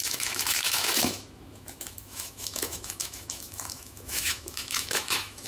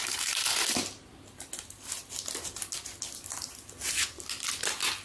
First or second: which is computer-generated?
first